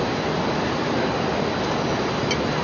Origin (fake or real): real